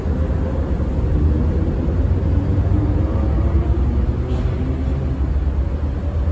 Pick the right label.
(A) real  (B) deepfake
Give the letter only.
A